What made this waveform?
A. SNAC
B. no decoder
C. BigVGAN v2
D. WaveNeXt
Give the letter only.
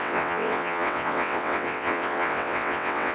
D